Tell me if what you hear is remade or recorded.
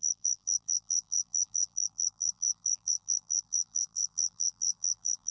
remade